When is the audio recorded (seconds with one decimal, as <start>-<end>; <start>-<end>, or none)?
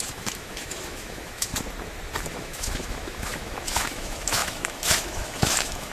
1.5-2.3